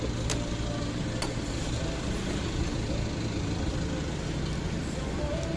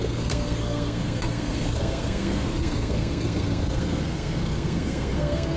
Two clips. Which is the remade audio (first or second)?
second